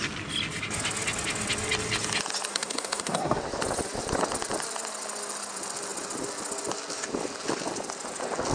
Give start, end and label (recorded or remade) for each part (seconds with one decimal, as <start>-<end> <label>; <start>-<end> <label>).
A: 0.0-2.5 recorded; 2.5-3.4 remade; 3.4-8.5 recorded